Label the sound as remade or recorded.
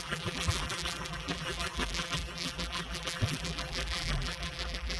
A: remade